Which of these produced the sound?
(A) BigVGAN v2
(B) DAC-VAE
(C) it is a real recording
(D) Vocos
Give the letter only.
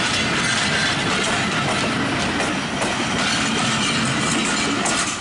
C